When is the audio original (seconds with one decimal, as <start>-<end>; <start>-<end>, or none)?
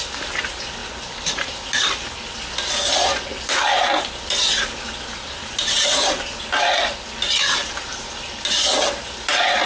0.0-0.8; 1.8-5.4; 6.2-7.6; 8.5-9.7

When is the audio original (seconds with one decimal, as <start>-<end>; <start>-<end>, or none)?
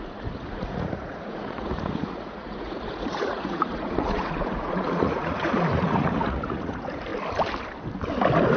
7.1-8.6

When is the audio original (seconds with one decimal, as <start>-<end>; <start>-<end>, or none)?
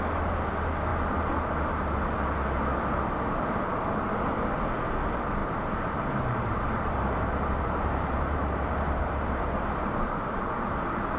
0.0-5.4; 10.4-11.2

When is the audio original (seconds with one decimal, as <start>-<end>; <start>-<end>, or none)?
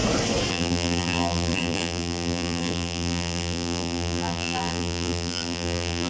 0.0-0.5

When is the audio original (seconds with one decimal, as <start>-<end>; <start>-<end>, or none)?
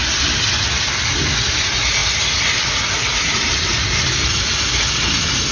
0.0-5.5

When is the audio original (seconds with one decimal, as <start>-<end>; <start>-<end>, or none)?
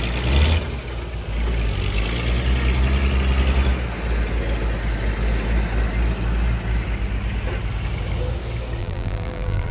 0.0-8.8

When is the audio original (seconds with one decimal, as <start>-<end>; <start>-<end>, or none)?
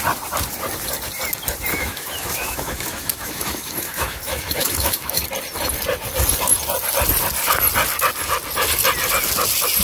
0.0-1.7; 5.2-9.8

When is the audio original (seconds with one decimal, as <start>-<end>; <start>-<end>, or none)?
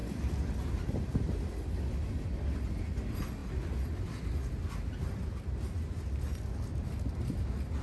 0.0-7.8